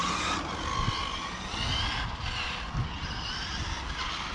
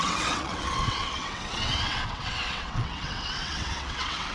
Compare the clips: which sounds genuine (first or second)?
first